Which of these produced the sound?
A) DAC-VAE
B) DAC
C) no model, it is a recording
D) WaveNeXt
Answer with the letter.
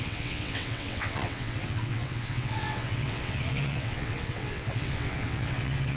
D